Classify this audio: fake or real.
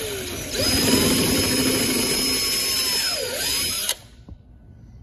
real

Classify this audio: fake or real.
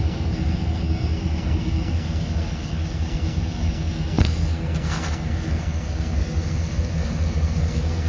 fake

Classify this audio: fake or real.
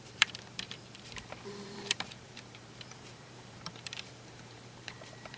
fake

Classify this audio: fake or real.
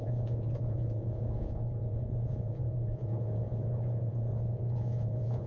fake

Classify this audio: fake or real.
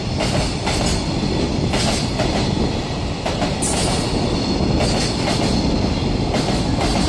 real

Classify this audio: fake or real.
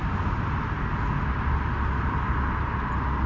real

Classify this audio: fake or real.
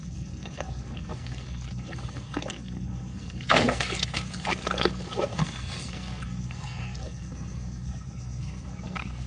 fake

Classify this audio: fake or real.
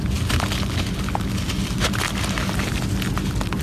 real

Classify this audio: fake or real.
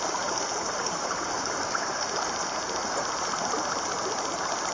real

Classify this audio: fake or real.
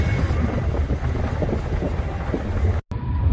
real